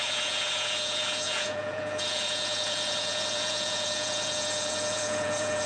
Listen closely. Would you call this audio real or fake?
fake